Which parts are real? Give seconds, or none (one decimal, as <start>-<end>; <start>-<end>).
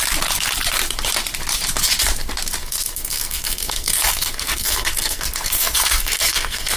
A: 0.0-2.6